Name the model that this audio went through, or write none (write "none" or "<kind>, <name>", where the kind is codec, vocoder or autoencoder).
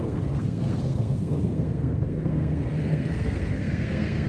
codec, SNAC